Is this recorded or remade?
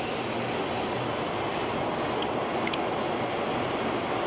recorded